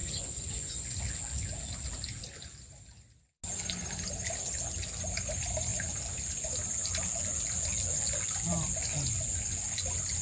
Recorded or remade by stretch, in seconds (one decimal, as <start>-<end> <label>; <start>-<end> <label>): 0.0-1.0 remade; 1.0-10.2 recorded